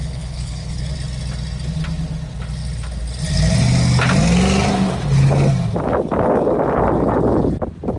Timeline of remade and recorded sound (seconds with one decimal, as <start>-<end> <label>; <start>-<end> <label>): 0.0-0.9 remade; 0.9-8.0 recorded